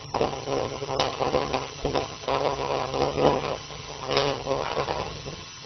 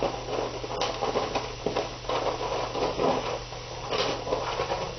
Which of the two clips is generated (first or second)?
first